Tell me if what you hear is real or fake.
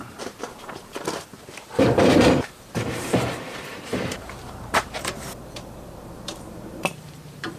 fake